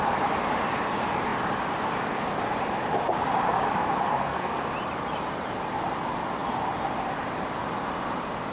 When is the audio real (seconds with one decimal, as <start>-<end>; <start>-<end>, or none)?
0.0-4.0; 4.7-8.5